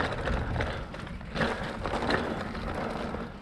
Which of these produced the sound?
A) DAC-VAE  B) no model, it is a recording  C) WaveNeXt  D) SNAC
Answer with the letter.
B